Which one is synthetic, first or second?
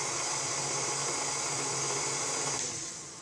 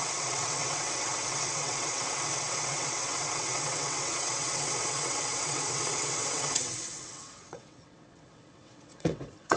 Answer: second